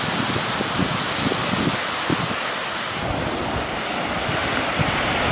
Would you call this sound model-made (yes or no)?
no